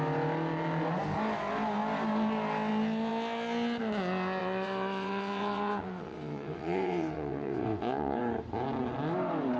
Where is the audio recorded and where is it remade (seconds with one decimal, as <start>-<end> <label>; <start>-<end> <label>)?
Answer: 0.0-4.4 recorded; 4.4-8.2 remade; 8.2-9.6 recorded